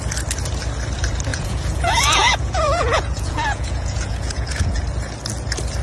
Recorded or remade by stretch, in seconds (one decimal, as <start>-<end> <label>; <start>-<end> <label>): 0.0-1.3 recorded; 1.3-4.8 remade; 4.8-5.8 recorded

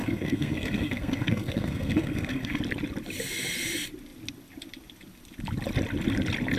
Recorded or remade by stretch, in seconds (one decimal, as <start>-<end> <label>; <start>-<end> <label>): 0.0-2.6 remade; 2.6-6.6 recorded

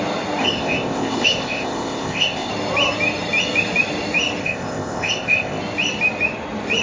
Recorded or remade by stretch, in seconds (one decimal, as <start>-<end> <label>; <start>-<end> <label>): 0.0-0.4 recorded; 0.4-2.5 remade; 2.5-4.4 recorded; 4.4-5.6 remade; 5.6-6.8 recorded